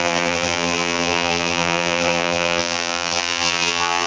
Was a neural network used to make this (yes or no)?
yes